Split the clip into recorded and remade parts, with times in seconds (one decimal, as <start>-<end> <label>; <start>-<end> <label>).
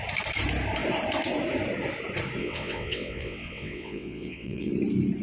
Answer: 0.0-2.4 recorded; 2.4-4.7 remade; 4.7-5.2 recorded